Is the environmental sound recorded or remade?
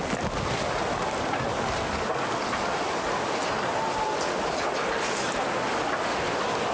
recorded